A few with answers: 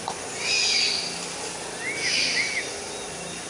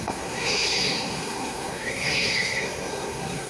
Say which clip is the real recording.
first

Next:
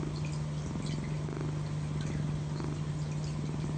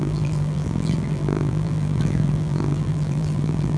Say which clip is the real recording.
first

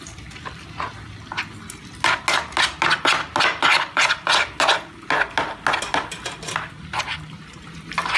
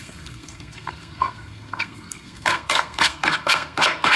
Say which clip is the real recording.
first